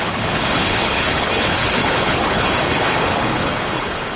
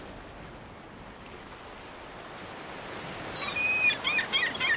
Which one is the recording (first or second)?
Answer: second